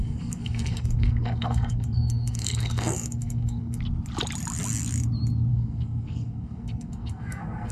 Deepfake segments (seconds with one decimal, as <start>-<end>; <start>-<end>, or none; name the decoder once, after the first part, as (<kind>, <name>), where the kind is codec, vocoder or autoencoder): 0.0-3.8 (codec, SNAC); 5.5-7.7